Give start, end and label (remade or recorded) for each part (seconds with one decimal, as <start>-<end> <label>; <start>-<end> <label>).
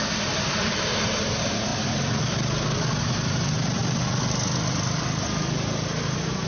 0.0-1.7 remade; 1.7-3.0 recorded; 3.0-3.8 remade; 3.8-6.5 recorded